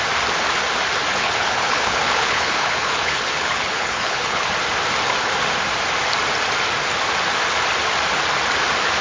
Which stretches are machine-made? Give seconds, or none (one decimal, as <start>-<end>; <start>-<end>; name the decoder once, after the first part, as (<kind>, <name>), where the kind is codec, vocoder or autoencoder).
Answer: 1.1-4.5 (codec, HILCodec)